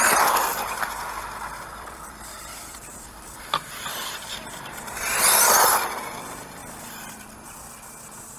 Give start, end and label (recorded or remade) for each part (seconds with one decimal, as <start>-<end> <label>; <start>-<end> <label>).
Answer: 0.0-0.5 recorded; 0.5-5.5 remade; 5.5-6.6 recorded; 6.6-8.4 remade